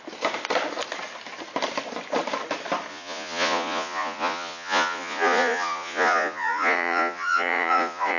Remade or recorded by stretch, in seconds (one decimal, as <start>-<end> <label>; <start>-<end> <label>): 0.0-2.9 recorded; 2.9-8.2 remade